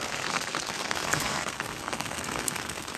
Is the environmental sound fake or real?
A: fake